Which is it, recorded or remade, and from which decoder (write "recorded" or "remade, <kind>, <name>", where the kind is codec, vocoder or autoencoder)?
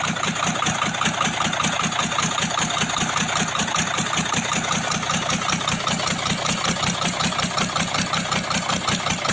recorded